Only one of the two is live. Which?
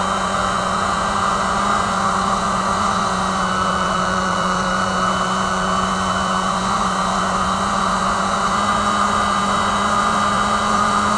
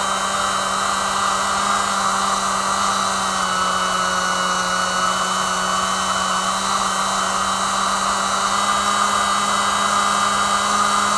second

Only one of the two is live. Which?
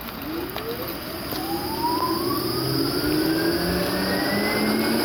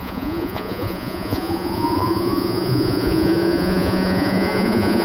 first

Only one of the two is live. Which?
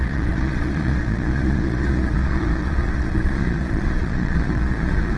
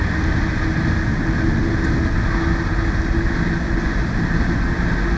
second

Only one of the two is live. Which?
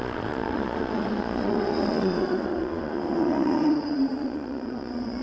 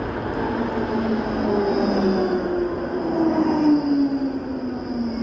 second